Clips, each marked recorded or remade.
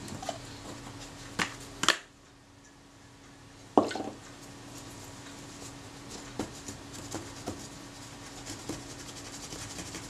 recorded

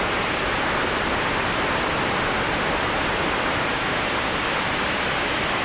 recorded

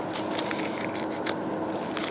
recorded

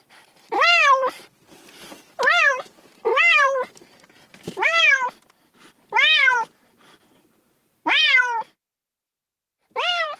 remade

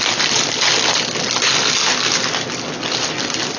recorded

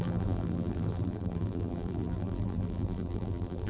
remade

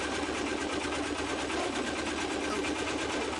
recorded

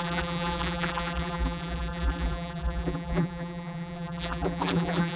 remade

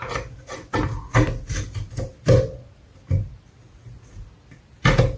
recorded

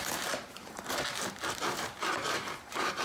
remade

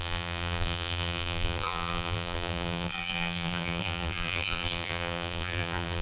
remade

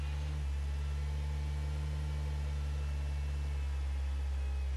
recorded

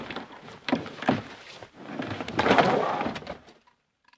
remade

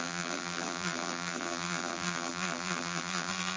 remade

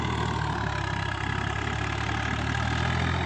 recorded